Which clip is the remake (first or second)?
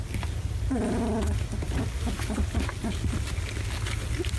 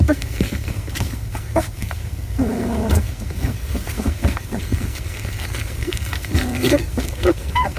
second